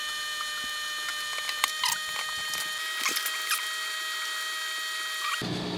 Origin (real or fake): real